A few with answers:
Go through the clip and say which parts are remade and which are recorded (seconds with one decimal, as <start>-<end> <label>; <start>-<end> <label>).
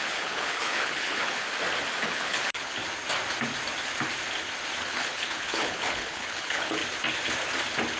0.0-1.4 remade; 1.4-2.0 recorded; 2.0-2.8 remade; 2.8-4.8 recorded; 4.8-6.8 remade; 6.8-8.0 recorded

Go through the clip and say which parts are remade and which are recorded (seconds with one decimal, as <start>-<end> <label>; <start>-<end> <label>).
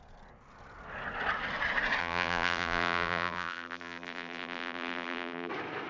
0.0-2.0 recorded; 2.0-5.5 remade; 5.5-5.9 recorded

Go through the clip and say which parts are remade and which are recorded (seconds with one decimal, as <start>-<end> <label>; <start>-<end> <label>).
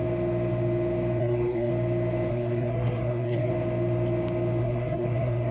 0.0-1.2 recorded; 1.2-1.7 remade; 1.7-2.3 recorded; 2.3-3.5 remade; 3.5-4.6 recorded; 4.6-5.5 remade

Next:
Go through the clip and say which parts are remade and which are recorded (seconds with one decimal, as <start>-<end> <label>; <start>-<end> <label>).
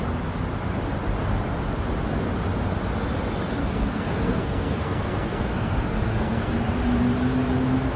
0.0-3.6 recorded; 3.6-6.5 remade; 6.5-8.0 recorded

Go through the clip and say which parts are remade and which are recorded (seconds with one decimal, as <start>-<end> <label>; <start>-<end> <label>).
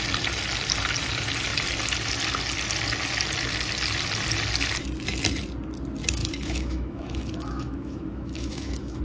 0.0-6.2 recorded; 6.2-9.0 remade